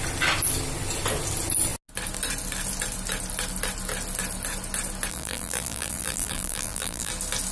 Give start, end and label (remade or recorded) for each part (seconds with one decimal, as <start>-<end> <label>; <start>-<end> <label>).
0.0-5.1 recorded; 5.1-7.1 remade; 7.1-7.5 recorded